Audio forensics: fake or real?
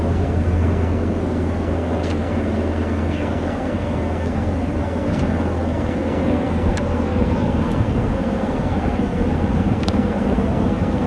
fake